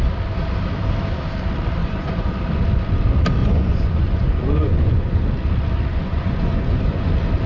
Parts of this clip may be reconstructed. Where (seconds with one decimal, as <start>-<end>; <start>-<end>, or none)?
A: 1.8-2.3; 3.4-5.1; 5.9-7.1